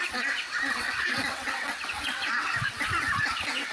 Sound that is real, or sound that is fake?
fake